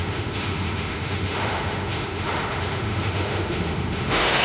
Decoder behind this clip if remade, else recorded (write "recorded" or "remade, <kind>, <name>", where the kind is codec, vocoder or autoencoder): remade, autoencoder, DAC-VAE